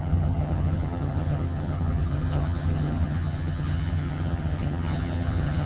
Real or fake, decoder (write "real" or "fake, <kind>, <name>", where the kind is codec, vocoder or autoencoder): fake, vocoder, HiFi-GAN